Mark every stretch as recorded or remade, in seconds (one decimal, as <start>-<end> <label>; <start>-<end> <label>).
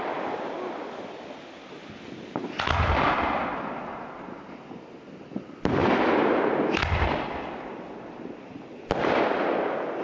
0.0-10.0 recorded